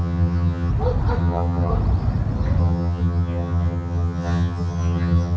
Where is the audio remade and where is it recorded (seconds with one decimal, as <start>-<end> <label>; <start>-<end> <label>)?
0.0-0.7 remade; 0.7-1.2 recorded; 1.2-1.7 remade; 1.7-2.6 recorded; 2.6-5.4 remade